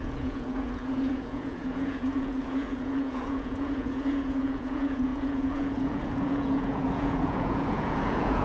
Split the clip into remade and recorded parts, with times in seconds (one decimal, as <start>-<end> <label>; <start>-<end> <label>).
0.0-8.4 remade